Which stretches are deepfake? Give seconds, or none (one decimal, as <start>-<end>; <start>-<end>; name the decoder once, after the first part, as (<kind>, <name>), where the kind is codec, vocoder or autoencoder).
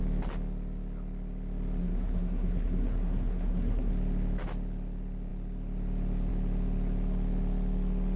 1.8-3.9 (codec, SNAC)